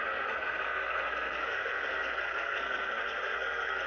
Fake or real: fake